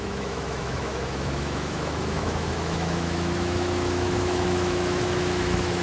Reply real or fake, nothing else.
fake